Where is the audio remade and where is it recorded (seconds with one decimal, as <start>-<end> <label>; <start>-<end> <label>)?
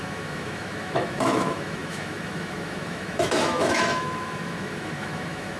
0.0-5.6 remade